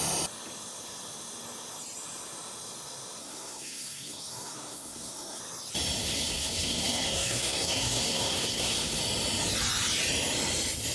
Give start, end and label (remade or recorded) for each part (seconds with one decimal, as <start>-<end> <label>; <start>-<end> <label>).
0.0-3.2 recorded; 3.2-5.4 remade; 5.4-6.0 recorded; 6.0-9.0 remade; 9.0-10.9 recorded